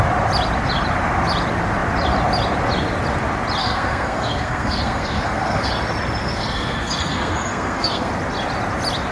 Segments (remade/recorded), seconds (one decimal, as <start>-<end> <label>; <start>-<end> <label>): 0.0-3.6 recorded; 3.6-5.7 remade; 5.7-6.2 recorded; 6.2-8.1 remade; 8.1-9.1 recorded